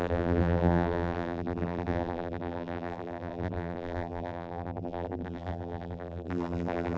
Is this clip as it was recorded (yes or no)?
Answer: no